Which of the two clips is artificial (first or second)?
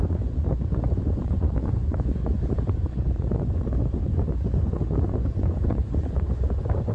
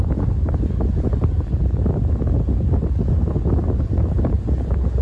first